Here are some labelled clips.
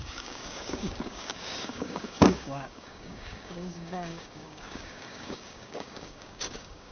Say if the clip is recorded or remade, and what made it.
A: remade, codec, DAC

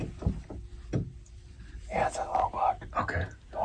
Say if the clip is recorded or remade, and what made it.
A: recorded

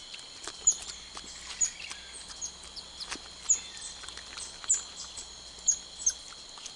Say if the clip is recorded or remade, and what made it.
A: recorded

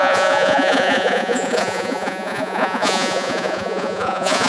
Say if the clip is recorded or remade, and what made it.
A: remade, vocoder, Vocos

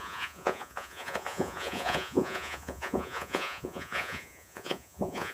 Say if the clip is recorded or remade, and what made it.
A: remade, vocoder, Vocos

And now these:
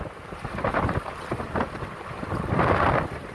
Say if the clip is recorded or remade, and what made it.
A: recorded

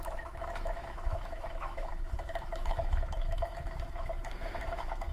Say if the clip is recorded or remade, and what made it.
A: remade, autoencoder, DAC-VAE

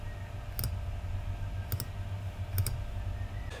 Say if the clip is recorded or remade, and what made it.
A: recorded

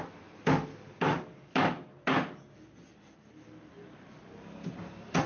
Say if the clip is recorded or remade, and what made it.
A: recorded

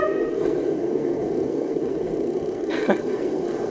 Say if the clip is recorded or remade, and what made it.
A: remade, codec, SNAC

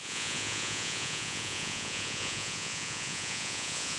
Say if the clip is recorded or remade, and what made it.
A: remade, vocoder, Vocos